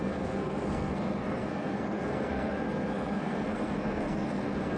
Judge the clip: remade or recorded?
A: remade